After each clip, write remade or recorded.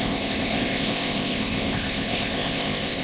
remade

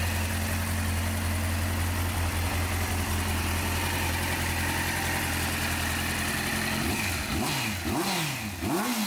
recorded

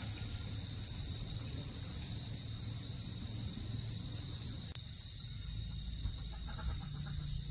recorded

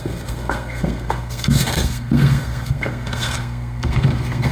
remade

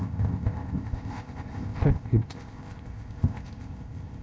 remade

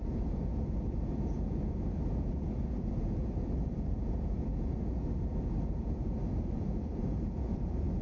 remade